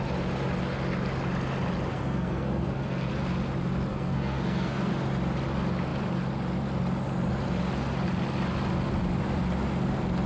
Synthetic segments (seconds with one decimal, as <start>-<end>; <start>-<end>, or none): 1.9-3.1; 3.9-4.9